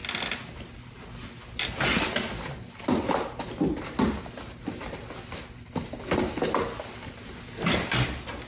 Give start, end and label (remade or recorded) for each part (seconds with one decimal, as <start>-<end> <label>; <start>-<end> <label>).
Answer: 0.0-8.5 recorded